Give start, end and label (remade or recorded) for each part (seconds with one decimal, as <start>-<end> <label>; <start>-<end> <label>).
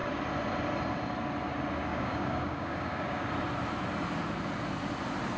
0.0-1.9 recorded; 1.9-3.3 remade; 3.3-5.4 recorded